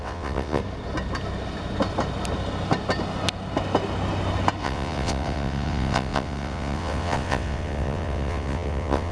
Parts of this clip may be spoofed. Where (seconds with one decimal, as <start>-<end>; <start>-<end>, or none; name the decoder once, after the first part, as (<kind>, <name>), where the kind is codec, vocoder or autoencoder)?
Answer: 0.0-0.6 (vocoder, WaveNeXt); 4.6-9.1